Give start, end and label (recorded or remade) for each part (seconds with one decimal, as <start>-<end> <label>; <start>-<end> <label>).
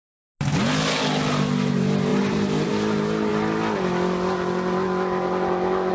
0.0-2.1 recorded; 2.1-2.7 remade; 2.7-5.9 recorded